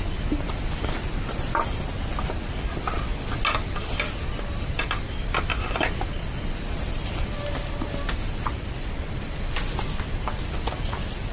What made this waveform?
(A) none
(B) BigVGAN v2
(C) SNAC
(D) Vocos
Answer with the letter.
A